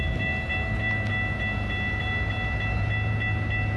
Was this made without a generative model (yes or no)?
yes